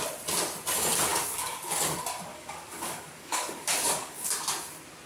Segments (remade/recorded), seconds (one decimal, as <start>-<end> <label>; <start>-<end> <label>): 0.0-1.1 recorded; 1.1-1.8 remade; 1.8-2.3 recorded; 2.3-4.3 remade; 4.3-5.1 recorded